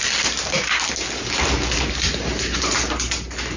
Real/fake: real